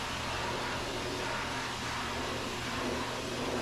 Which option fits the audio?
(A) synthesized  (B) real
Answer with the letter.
B